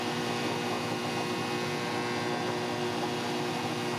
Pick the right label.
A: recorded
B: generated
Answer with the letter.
A